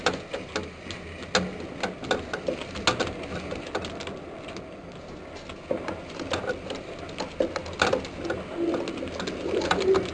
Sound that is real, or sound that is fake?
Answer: real